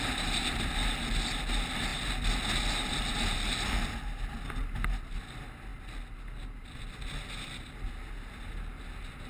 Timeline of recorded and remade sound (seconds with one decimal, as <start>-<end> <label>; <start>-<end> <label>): 0.0-9.3 recorded